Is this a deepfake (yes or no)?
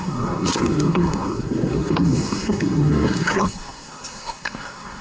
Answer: yes